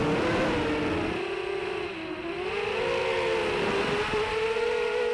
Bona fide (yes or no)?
yes